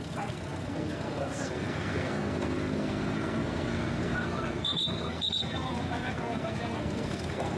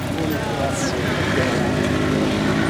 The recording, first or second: second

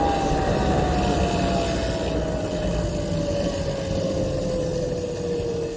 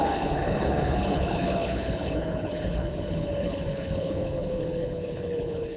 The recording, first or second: first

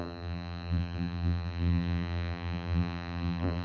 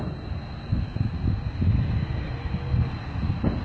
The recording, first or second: second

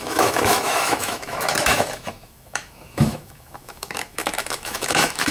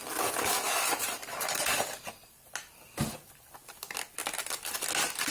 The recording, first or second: second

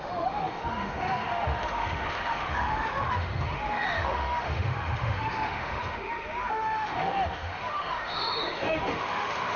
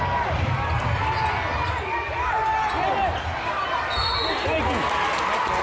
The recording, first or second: second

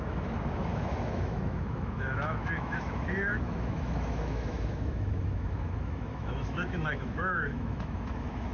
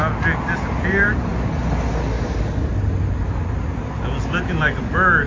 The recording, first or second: second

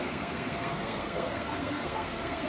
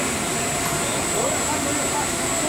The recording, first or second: second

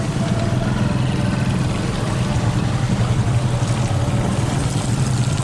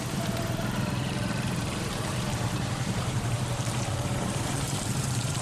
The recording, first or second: first